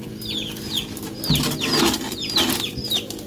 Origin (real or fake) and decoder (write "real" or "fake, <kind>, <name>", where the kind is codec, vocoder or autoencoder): real